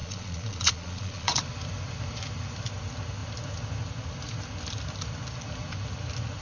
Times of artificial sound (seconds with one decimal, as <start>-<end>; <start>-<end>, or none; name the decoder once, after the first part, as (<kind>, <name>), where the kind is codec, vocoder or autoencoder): 0.0-1.4 (vocoder, Vocos)